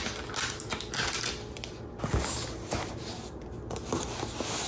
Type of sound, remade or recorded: recorded